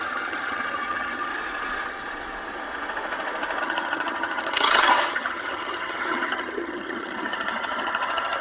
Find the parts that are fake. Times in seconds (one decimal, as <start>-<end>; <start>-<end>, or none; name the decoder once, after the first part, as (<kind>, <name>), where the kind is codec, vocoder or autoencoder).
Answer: 0.0-1.3 (vocoder, HiFi-GAN); 3.6-8.4